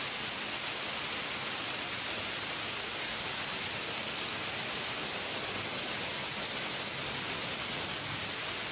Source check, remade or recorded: recorded